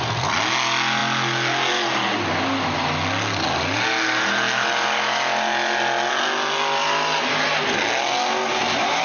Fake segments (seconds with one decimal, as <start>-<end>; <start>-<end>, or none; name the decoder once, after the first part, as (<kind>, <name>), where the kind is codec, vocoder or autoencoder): none